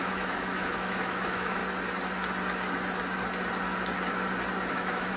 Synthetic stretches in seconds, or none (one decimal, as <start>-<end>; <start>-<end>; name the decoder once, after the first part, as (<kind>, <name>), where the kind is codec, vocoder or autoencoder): 0.0-1.6 (autoencoder, DAC-VAE); 4.7-5.2